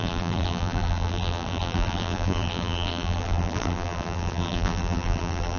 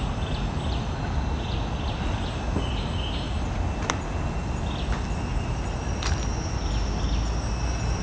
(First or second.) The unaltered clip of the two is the second